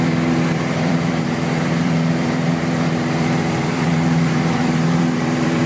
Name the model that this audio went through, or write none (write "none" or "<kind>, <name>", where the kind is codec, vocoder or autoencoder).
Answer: vocoder, BigVGAN v2